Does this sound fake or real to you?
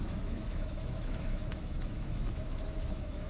fake